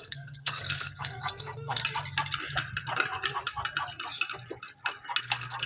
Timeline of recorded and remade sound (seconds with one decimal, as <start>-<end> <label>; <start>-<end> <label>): 0.0-1.8 remade; 1.8-5.2 recorded; 5.2-5.7 remade

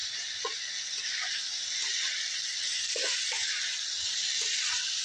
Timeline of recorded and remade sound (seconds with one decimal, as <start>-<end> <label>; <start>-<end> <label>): 0.0-5.0 recorded

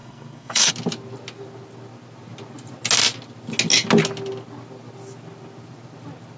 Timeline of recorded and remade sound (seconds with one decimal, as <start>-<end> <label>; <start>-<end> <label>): 0.0-0.7 remade; 0.7-6.4 recorded

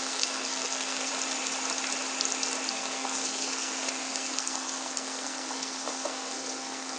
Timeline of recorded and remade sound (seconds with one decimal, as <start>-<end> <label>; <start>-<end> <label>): 0.0-1.1 remade; 1.1-2.7 recorded; 2.7-7.0 remade

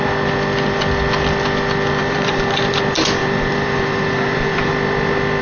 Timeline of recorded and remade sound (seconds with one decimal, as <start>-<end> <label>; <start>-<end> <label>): 0.0-2.0 recorded; 2.0-2.8 remade; 2.8-3.2 recorded; 3.2-4.7 remade; 4.7-5.4 recorded

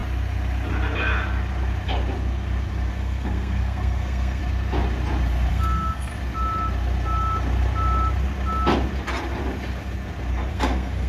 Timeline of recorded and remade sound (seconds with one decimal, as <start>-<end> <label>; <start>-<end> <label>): 0.0-2.9 recorded; 2.9-4.4 remade; 4.4-5.5 recorded; 5.5-6.1 remade; 6.1-10.5 recorded; 10.5-11.1 remade

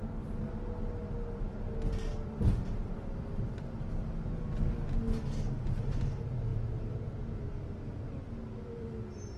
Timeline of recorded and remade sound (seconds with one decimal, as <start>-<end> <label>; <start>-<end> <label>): 0.0-9.4 recorded